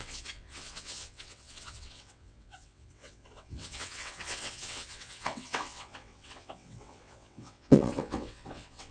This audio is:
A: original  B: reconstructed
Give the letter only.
B